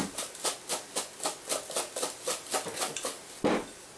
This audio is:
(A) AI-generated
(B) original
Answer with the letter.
B